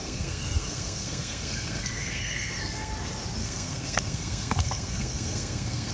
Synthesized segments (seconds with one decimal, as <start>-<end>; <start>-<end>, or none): 0.0-2.9; 3.4-5.9